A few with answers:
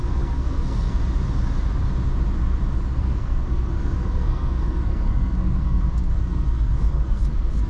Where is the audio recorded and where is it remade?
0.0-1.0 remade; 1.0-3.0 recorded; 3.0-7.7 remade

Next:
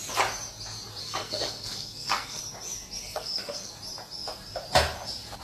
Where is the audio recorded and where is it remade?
0.0-1.0 recorded; 1.0-2.4 remade; 2.4-3.0 recorded; 3.0-3.7 remade; 3.7-5.4 recorded